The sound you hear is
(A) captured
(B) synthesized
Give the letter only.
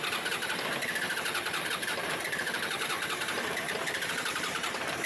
B